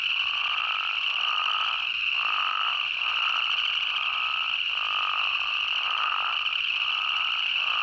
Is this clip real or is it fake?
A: real